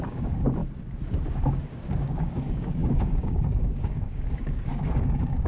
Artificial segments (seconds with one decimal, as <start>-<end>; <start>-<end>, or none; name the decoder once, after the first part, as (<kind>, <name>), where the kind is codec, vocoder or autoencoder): 0.0-0.6 (codec, DAC); 1.3-5.5